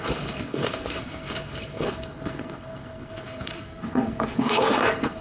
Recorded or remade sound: remade